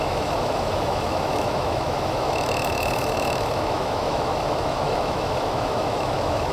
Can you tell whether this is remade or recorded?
remade